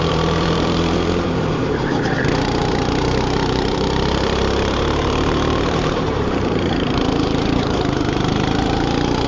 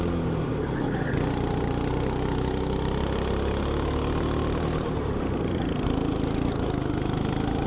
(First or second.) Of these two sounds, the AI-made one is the first